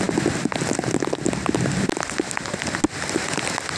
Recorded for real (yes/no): yes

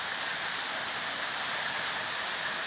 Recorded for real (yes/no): yes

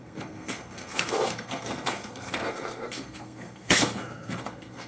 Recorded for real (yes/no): no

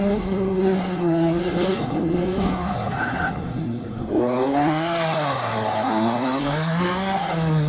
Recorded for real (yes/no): no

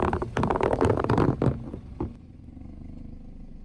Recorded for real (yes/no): yes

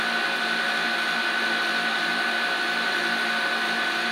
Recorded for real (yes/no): yes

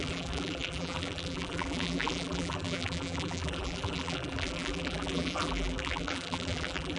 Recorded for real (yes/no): no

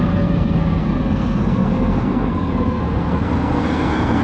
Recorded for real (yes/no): no